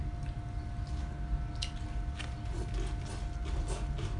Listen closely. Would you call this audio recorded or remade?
recorded